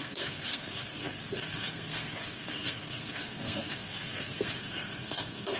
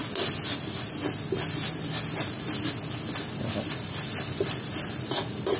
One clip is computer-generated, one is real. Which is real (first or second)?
second